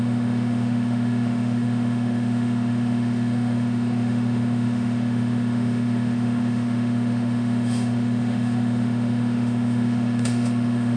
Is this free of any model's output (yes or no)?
no